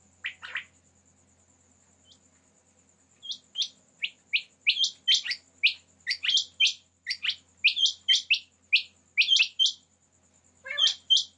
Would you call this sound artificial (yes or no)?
no